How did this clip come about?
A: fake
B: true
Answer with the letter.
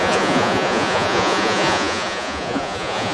A